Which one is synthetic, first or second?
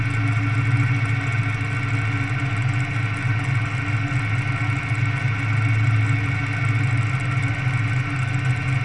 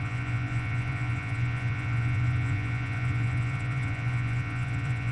second